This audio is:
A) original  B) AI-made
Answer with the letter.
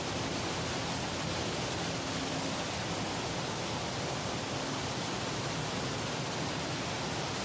A